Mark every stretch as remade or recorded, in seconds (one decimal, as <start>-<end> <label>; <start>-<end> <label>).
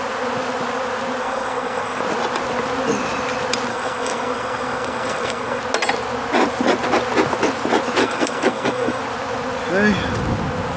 0.0-1.2 recorded; 1.2-2.0 remade; 2.0-3.7 recorded; 3.7-5.6 remade; 5.6-8.0 recorded; 8.0-9.0 remade; 9.0-10.8 recorded